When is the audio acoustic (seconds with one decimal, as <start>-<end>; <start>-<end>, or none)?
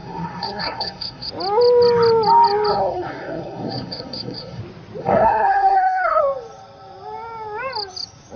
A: 1.3-2.7; 4.6-5.0; 6.2-8.4